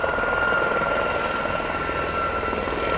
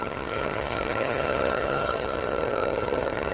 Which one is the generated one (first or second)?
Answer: second